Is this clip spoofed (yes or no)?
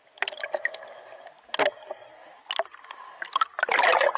no